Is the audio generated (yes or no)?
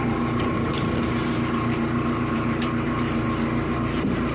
yes